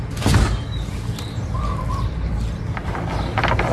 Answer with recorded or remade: remade